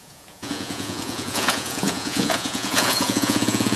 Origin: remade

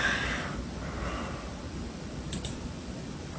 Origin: recorded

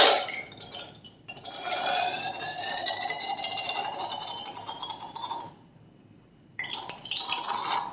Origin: recorded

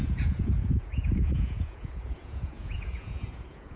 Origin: remade